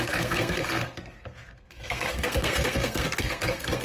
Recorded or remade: remade